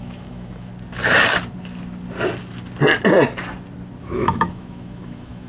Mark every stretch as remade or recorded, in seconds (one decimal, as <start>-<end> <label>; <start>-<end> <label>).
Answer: 0.0-0.7 remade; 0.7-4.0 recorded; 4.0-5.5 remade